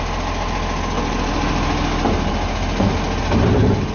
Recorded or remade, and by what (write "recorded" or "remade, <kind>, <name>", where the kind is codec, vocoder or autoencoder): recorded